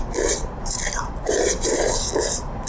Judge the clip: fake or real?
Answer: real